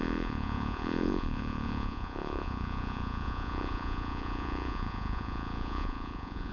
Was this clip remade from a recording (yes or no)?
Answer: yes